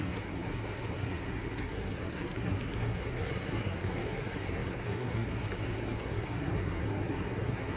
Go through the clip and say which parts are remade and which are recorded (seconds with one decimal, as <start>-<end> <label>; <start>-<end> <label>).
0.0-7.8 remade